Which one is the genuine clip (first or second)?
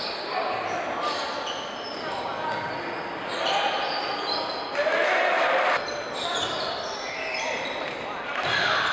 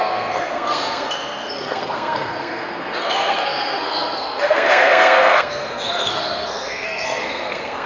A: first